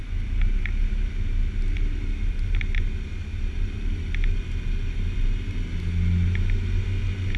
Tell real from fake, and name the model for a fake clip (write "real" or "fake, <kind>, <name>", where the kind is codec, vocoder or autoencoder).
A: real